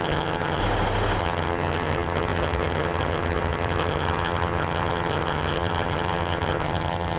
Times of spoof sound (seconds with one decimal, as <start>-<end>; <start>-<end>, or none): 0.0-0.6; 1.2-7.2